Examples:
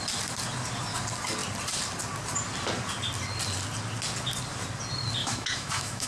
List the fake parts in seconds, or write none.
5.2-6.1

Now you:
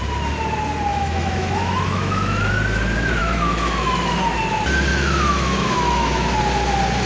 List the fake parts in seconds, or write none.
0.9-2.5; 3.2-4.2; 4.9-6.4

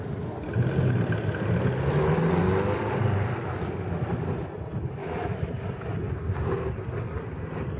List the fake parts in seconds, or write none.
5.0-5.5

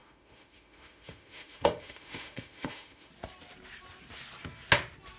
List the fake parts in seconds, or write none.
0.0-3.1

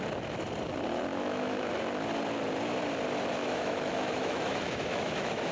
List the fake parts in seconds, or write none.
1.1-1.7; 3.4-5.5